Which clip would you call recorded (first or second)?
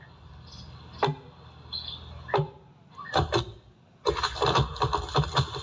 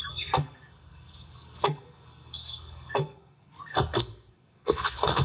first